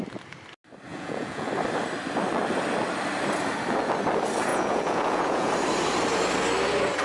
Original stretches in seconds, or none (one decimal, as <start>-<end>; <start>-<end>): 0.0-0.9; 1.5-4.5; 5.5-7.0